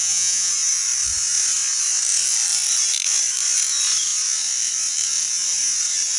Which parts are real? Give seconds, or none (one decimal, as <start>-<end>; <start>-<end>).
0.5-6.2